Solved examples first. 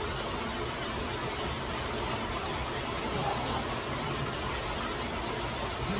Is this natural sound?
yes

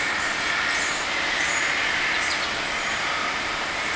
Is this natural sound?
no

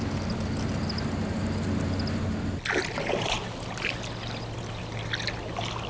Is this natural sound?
yes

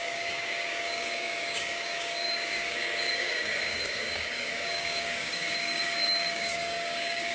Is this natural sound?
no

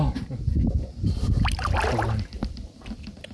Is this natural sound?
yes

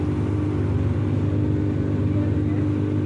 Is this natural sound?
yes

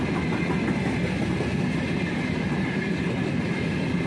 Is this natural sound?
yes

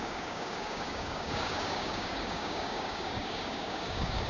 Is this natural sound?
no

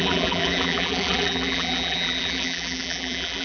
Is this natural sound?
no